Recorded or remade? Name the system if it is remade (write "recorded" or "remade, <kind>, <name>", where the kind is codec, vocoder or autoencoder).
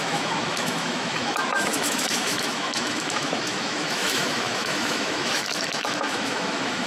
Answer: remade, autoencoder, DAC-VAE